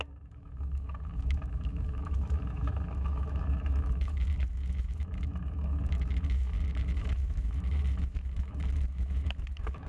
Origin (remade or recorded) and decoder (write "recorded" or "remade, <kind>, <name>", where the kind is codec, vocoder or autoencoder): remade, autoencoder, DAC-VAE